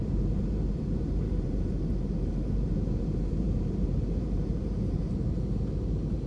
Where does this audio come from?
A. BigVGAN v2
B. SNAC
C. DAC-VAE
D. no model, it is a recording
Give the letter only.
A